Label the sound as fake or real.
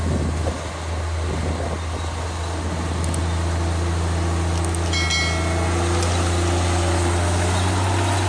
real